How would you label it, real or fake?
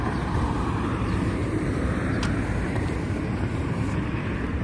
fake